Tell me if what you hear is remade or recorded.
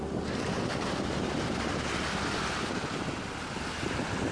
recorded